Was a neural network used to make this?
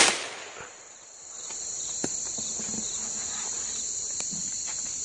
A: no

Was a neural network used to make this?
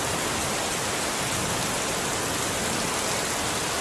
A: no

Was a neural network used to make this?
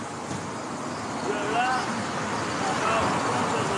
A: no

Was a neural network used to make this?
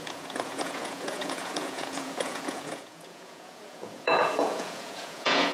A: yes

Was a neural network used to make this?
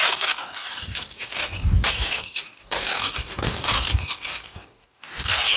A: yes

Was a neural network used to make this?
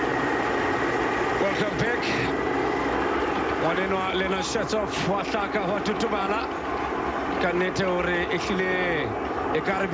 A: no